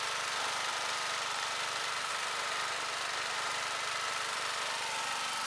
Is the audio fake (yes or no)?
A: yes